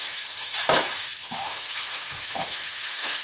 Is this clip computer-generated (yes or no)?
yes